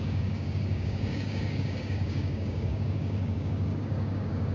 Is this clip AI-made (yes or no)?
yes